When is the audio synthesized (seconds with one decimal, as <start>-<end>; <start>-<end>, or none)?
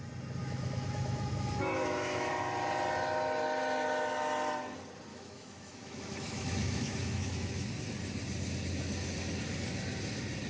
0.4-2.3; 5.1-7.7